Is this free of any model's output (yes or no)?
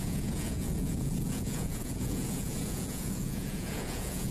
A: no